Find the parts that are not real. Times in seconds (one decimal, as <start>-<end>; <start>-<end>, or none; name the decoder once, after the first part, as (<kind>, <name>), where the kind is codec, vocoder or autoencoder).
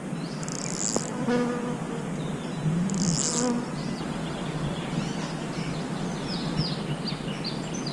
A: none